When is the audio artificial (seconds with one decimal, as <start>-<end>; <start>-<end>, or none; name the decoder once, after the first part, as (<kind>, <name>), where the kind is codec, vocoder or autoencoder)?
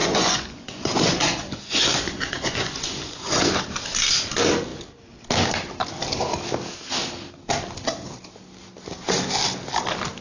0.0-3.5 (vocoder, Vocos)